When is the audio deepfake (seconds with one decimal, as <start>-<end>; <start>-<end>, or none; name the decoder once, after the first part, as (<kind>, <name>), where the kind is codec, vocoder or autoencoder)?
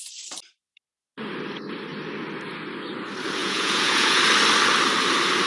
3.4-4.2 (vocoder, Vocos)